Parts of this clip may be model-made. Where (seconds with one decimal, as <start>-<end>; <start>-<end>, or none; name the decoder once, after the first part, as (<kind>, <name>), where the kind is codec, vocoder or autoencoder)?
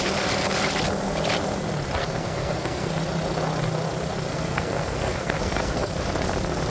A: 2.0-2.9 (codec, SNAC); 4.3-5.9